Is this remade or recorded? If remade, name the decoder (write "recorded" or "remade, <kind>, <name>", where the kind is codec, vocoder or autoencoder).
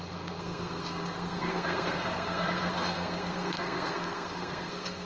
remade, codec, SNAC